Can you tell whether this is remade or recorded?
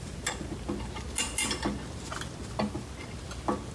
recorded